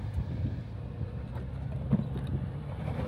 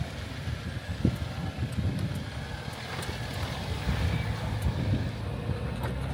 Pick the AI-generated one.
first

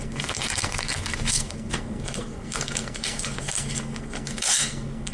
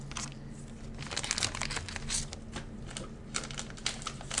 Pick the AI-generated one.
first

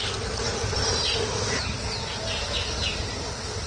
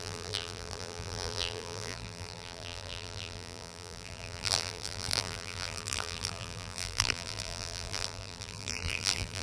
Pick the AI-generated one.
second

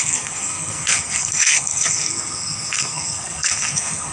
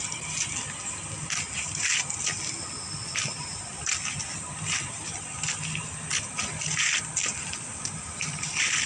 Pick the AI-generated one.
first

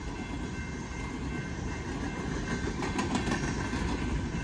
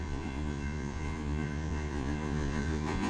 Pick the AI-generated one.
second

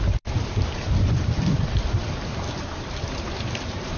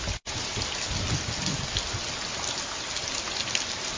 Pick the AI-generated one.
first